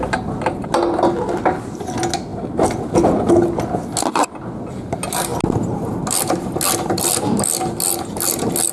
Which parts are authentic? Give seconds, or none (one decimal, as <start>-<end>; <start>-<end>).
0.0-8.7